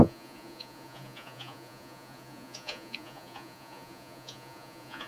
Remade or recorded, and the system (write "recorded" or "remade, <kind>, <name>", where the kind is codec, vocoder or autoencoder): remade, vocoder, Vocos